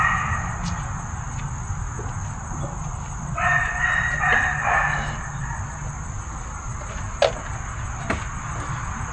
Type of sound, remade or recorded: recorded